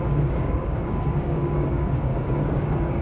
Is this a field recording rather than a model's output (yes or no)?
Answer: no